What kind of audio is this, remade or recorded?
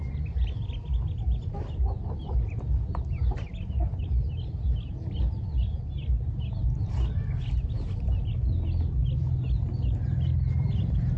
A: recorded